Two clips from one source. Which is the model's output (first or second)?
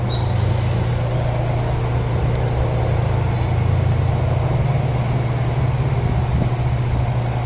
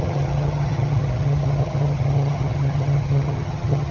second